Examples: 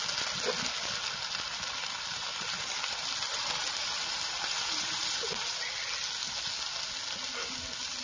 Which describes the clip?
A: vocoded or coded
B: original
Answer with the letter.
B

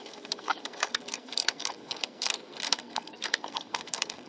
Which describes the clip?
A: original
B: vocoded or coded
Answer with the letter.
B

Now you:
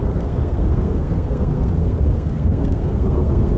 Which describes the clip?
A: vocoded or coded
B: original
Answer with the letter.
A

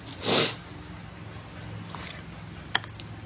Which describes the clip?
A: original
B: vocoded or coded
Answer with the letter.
A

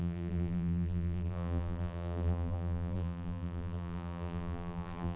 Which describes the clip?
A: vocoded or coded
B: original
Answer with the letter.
A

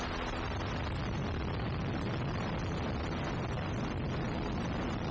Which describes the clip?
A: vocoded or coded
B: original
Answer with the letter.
B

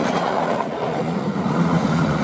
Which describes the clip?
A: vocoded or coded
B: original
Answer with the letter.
A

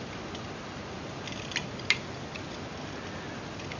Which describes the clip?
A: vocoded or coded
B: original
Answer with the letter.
B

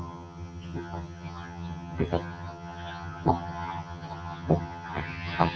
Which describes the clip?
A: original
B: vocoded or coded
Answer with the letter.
B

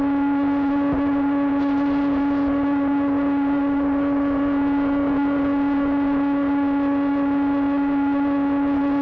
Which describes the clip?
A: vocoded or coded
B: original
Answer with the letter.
A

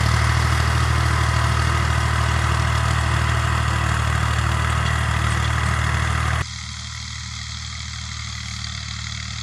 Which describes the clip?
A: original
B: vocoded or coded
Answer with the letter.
A